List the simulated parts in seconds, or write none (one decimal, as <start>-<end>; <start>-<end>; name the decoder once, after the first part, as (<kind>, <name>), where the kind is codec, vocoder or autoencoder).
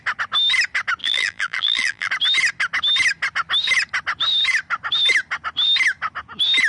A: 1.0-2.1 (vocoder, BigVGAN v2)